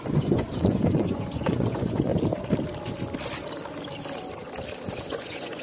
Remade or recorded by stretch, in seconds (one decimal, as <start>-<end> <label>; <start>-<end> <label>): 0.0-2.1 remade; 2.1-5.0 recorded; 5.0-5.6 remade